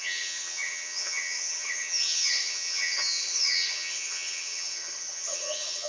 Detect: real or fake fake